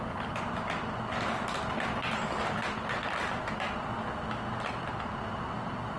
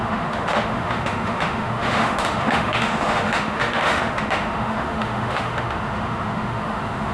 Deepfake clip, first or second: second